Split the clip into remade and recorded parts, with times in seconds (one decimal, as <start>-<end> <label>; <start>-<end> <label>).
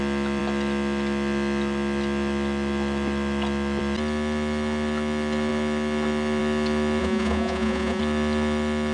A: 0.0-7.0 recorded; 7.0-8.0 remade; 8.0-8.9 recorded